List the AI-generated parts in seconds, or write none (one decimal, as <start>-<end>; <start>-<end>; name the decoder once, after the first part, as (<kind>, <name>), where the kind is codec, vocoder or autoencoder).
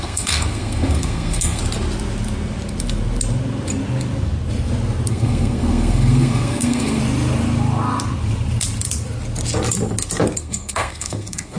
0.0-1.6 (codec, SNAC); 5.1-7.0; 10.4-11.6